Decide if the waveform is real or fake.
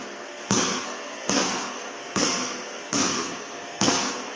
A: fake